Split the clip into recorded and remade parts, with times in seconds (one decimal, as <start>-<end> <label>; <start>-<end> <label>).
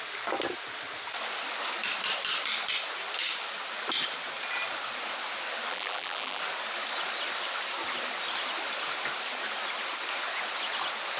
0.0-5.7 recorded; 5.7-6.4 remade; 6.4-11.2 recorded